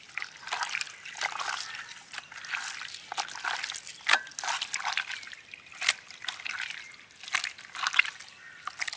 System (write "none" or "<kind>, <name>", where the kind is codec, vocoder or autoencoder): none